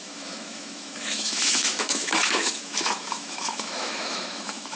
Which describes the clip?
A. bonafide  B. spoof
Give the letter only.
B